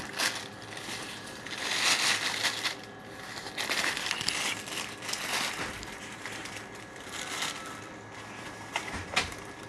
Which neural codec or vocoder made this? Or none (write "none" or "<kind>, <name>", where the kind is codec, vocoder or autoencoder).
none